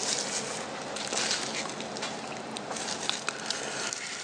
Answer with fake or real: real